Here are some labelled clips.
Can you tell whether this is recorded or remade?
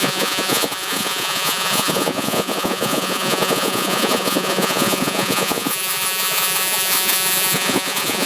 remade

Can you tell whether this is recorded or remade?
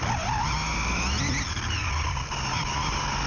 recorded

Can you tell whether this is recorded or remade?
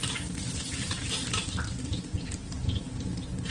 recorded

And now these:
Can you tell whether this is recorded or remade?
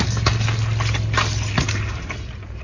recorded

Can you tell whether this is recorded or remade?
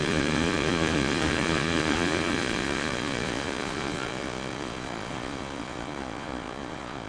remade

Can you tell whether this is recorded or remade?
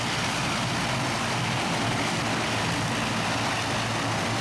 recorded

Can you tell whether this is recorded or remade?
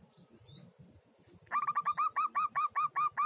recorded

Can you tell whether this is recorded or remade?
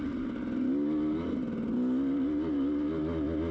recorded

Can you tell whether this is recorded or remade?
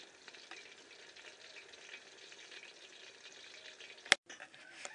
recorded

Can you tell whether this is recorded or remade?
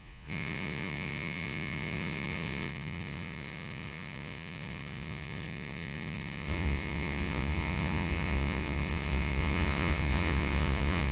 remade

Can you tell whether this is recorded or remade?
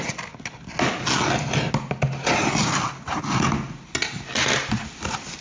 recorded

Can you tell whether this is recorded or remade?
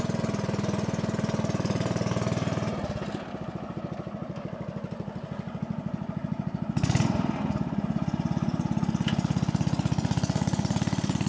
recorded